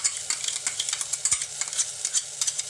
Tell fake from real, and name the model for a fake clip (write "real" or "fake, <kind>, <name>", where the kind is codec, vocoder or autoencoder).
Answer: real